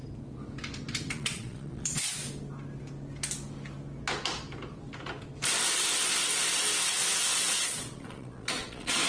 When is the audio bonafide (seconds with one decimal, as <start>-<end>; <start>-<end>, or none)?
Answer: 0.0-1.1; 2.2-7.4